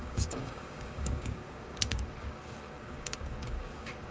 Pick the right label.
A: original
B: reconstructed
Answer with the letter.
B